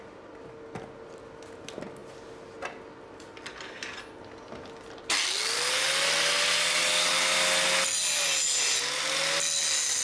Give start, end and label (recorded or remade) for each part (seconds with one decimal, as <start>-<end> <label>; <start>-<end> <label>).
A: 0.0-10.0 recorded